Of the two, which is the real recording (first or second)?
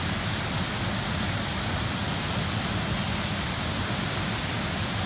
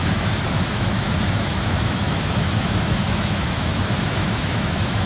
first